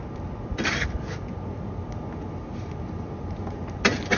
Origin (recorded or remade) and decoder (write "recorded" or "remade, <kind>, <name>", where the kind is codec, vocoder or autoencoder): recorded